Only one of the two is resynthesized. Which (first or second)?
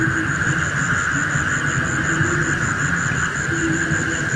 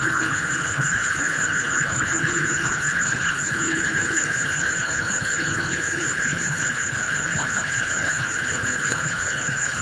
second